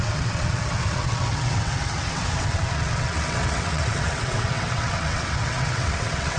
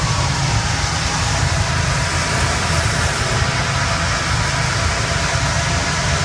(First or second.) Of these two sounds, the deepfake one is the first